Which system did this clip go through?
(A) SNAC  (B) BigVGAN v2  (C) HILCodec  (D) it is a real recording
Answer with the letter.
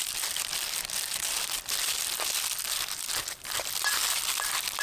D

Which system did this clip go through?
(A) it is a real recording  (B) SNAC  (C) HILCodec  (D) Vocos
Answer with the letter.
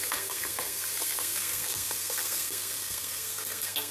B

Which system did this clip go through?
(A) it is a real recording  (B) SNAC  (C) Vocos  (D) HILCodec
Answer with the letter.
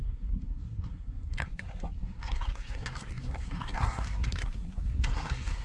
B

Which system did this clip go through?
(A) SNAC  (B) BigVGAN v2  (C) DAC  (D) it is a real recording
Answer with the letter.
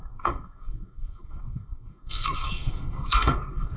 A